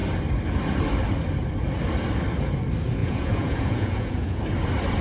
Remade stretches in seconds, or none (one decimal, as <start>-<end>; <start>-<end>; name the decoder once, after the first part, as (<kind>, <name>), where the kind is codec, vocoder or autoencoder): 3.0-4.4 (vocoder, Vocos)